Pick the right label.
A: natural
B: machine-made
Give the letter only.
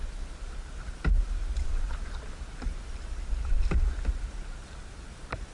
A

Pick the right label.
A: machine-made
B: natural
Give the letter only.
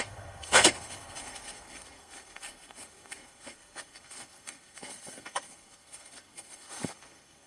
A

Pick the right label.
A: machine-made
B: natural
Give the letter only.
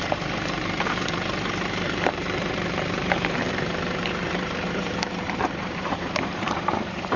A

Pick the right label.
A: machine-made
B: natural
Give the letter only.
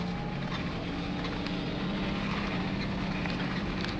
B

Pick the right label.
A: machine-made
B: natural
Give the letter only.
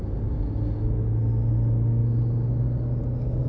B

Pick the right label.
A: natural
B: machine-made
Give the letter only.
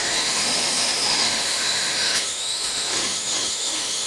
B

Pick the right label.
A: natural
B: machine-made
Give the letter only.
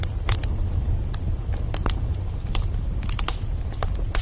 A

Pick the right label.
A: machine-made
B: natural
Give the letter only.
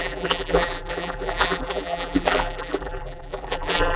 A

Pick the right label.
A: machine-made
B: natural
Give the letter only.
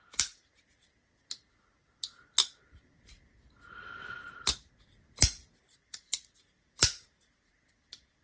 B